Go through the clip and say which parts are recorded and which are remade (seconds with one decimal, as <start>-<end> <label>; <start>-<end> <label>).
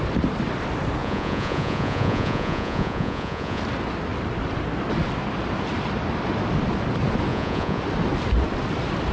0.0-1.0 recorded; 1.0-3.6 remade; 3.6-7.3 recorded; 7.3-7.8 remade; 7.8-9.1 recorded